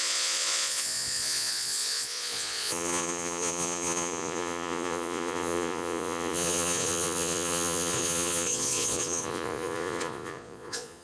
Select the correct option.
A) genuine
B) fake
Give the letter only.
B